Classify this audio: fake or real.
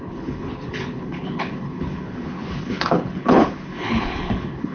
fake